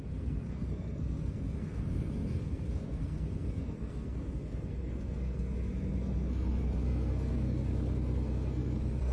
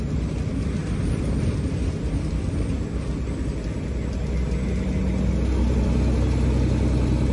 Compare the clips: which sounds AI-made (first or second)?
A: first